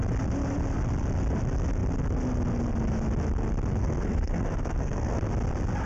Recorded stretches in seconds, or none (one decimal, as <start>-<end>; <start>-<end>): 0.0-3.8; 5.3-5.9